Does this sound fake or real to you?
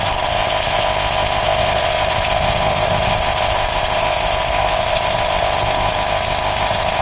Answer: fake